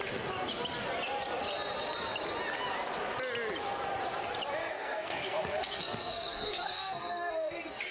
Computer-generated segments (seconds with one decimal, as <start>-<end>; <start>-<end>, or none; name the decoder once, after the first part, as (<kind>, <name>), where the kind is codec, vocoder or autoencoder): 4.6-7.3 (codec, SNAC)